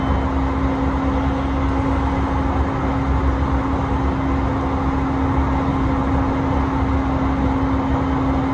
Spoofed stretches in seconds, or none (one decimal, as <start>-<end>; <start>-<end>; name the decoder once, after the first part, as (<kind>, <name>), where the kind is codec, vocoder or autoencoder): none